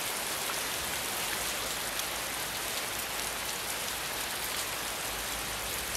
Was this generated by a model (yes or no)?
no